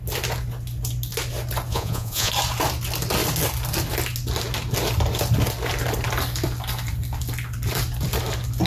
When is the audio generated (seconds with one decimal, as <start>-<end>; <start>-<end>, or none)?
1.7-2.3